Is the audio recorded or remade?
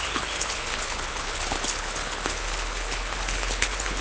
remade